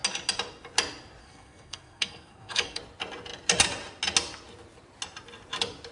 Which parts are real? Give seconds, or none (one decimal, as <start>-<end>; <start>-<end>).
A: 0.0-1.2; 2.8-5.9